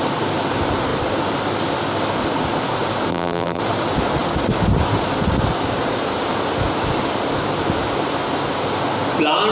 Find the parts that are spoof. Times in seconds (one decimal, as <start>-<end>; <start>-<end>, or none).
3.1-3.6